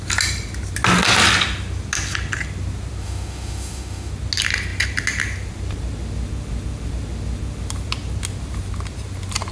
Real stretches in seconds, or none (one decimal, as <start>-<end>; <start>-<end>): 0.0-3.0; 4.1-9.5